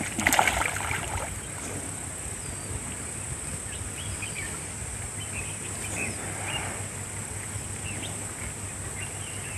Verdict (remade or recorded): recorded